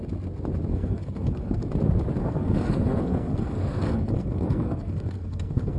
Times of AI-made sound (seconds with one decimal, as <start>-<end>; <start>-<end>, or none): 0.7-1.6; 2.2-5.8